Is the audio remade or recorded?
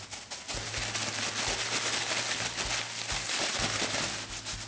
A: recorded